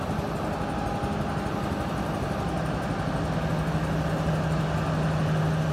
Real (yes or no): yes